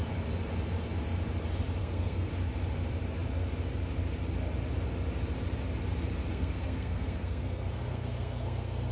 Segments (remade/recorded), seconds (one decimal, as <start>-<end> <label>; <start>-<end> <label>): 0.0-1.8 recorded; 1.8-2.3 remade; 2.3-6.3 recorded; 6.3-8.9 remade